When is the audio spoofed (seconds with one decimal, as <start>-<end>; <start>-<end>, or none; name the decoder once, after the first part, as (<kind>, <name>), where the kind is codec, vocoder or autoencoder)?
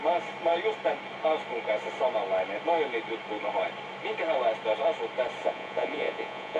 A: 5.4-6.6 (vocoder, Vocos)